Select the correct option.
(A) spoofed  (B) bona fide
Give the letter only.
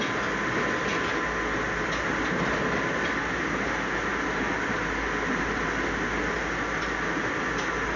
B